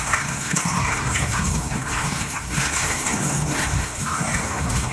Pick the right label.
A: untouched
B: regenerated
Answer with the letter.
B